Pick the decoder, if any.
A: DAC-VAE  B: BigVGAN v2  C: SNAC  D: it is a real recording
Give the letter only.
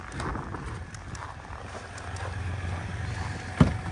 D